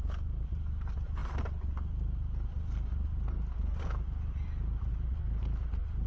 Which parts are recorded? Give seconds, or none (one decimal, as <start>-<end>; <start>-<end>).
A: 0.0-6.1